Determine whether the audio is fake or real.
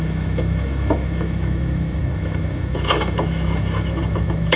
fake